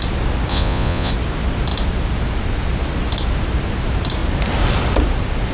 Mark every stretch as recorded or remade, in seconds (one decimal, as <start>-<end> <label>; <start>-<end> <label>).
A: 0.0-0.5 recorded; 0.5-1.1 remade; 1.1-5.5 recorded